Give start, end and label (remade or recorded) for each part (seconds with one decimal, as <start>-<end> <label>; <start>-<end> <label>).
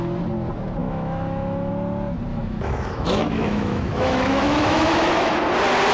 0.0-0.8 recorded; 0.8-1.7 remade; 1.7-2.3 recorded; 2.3-5.4 remade; 5.4-5.9 recorded